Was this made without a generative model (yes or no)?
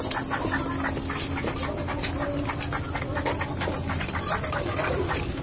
yes